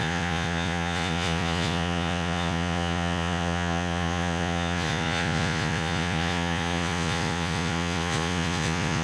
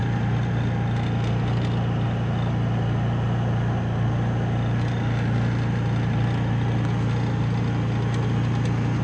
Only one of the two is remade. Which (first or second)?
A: first